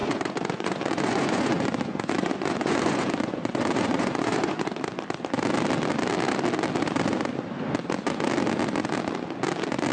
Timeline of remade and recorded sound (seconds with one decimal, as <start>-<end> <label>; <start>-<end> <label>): 0.0-4.8 remade; 4.8-9.9 recorded